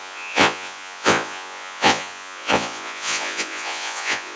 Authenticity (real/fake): fake